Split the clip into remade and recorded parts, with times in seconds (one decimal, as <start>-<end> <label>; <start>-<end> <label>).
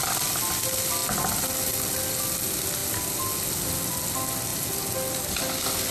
0.0-5.9 recorded